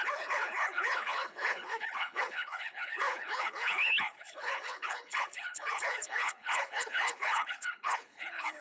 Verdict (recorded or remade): remade